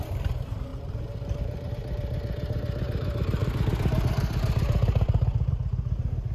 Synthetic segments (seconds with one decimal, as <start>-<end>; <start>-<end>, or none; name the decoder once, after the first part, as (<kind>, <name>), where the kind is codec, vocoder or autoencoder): 0.0-6.3 (vocoder, BigVGAN v2)